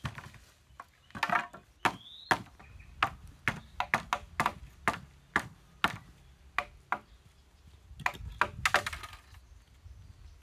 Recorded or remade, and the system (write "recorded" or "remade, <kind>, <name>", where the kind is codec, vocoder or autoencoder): recorded